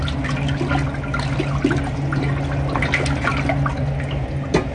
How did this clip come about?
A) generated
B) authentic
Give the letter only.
B